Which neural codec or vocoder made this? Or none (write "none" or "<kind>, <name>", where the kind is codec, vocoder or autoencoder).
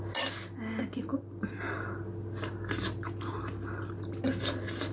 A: none